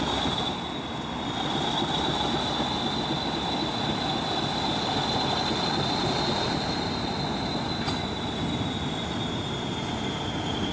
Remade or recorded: recorded